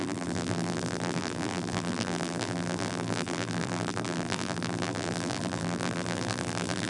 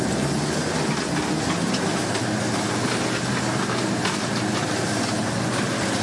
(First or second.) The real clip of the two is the second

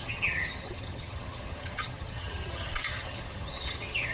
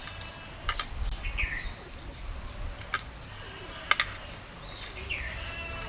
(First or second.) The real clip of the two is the second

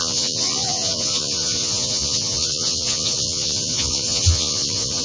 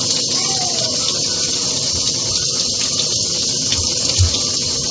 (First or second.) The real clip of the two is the second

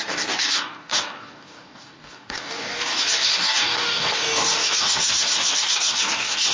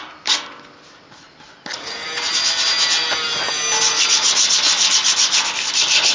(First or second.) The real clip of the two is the second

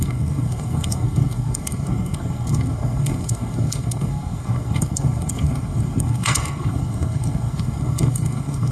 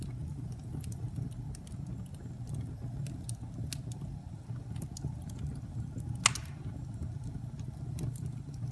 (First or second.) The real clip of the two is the second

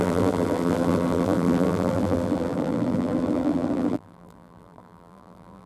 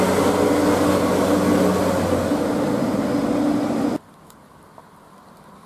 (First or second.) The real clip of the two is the second